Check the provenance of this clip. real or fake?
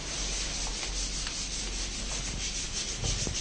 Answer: real